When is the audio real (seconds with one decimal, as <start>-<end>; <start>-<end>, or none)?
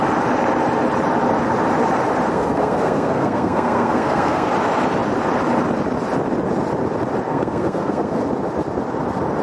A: 0.0-2.3; 4.5-7.3; 8.2-9.4